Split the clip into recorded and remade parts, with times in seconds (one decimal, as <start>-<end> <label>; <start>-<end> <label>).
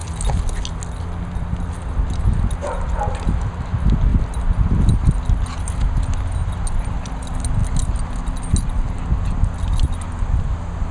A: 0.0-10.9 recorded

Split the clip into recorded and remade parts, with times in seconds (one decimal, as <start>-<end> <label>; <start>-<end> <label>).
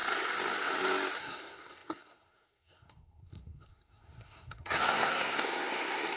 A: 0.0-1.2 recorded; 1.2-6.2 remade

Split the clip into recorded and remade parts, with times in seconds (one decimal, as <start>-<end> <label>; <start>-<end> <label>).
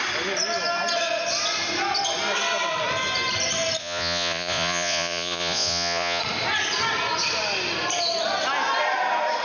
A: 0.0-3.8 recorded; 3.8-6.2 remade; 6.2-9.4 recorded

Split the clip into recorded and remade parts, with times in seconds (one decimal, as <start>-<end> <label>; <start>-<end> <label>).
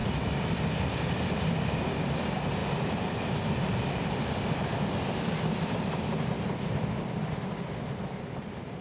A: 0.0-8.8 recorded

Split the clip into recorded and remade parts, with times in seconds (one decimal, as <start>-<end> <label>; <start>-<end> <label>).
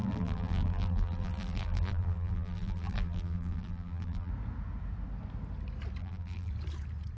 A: 0.0-4.3 remade; 4.3-6.0 recorded; 6.0-6.5 remade; 6.5-7.2 recorded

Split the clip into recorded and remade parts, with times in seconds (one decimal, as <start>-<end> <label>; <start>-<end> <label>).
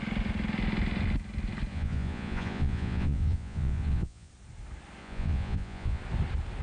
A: 0.0-1.7 recorded; 1.7-4.3 remade; 4.3-5.0 recorded; 5.0-6.0 remade; 6.0-6.6 recorded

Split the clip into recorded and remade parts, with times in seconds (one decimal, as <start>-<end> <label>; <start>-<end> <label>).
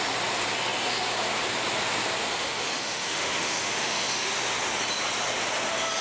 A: 0.0-2.2 recorded; 2.2-4.3 remade; 4.3-6.0 recorded